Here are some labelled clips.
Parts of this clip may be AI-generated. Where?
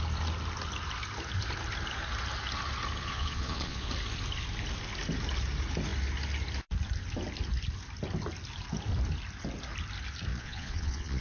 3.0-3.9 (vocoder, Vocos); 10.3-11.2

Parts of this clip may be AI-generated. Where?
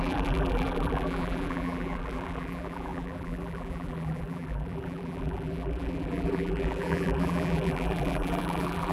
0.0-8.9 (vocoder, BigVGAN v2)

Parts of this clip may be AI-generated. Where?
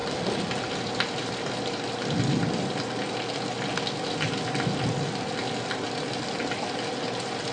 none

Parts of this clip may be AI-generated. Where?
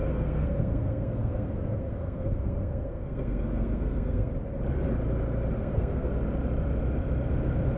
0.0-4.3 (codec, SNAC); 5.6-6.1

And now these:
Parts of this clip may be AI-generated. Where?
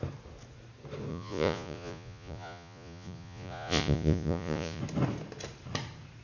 1.1-4.8 (vocoder, Vocos)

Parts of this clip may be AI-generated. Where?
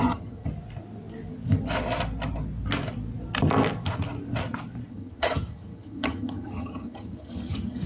0.0-0.5 (vocoder, HiFi-GAN); 4.9-7.9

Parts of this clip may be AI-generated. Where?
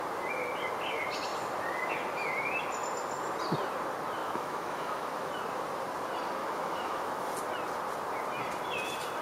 4.2-5.3 (autoencoder, DAC-VAE); 6.4-7.3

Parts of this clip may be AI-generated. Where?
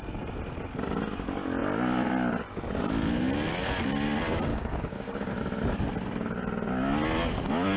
4.5-5.3 (codec, DAC)